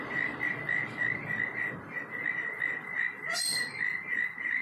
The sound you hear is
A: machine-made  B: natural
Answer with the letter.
B